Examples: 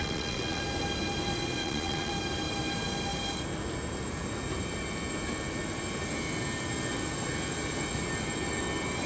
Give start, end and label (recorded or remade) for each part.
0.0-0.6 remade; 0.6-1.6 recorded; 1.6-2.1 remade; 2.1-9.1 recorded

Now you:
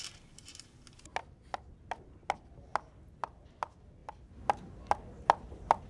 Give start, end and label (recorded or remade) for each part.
0.0-5.9 recorded

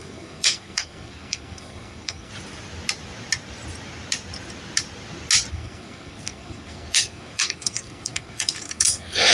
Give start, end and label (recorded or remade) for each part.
0.0-2.3 remade; 2.3-5.5 recorded; 5.5-9.3 remade

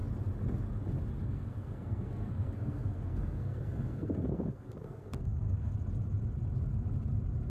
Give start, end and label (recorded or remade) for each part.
0.0-1.2 recorded; 1.2-5.7 remade; 5.7-7.5 recorded

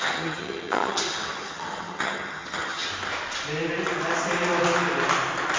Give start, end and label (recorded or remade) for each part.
0.0-2.9 remade; 2.9-5.6 recorded

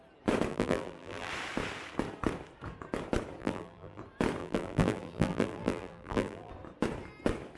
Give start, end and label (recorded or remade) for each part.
0.0-0.5 recorded; 0.5-1.3 remade; 1.3-3.4 recorded; 3.4-4.0 remade; 4.0-4.4 recorded; 4.4-6.5 remade; 6.5-7.6 recorded

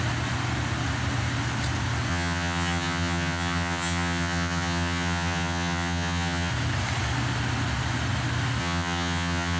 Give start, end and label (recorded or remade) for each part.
0.0-2.1 recorded; 2.1-6.5 remade; 6.5-8.6 recorded; 8.6-9.6 remade

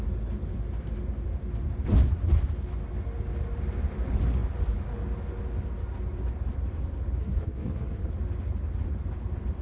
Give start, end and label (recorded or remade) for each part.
0.0-7.2 recorded; 7.2-8.1 remade; 8.1-9.6 recorded